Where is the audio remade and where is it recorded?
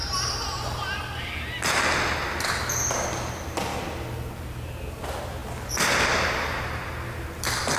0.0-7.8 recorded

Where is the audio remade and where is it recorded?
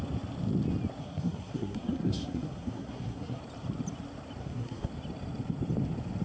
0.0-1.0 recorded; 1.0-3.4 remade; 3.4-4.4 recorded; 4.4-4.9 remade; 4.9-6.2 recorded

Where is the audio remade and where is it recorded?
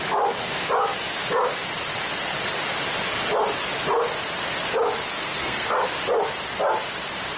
0.0-5.2 recorded; 5.2-5.7 remade; 5.7-7.4 recorded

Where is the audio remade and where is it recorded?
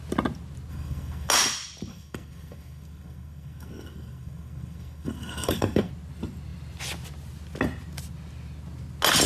0.0-0.7 recorded; 0.7-1.3 remade; 1.3-1.9 recorded; 1.9-5.9 remade; 5.9-9.3 recorded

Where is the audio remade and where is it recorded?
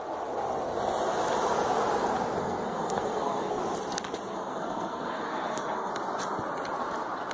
0.0-2.4 recorded; 2.4-3.6 remade; 3.6-4.3 recorded; 4.3-5.9 remade; 5.9-7.3 recorded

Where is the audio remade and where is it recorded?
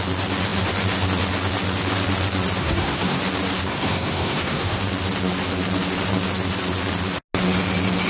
0.0-2.6 recorded; 2.6-3.2 remade; 3.2-3.7 recorded; 3.7-4.8 remade; 4.8-8.1 recorded